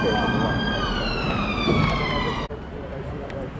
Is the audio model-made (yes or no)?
yes